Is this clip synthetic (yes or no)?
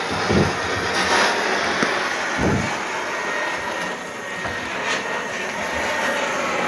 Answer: no